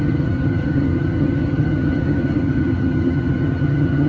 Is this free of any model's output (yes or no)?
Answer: no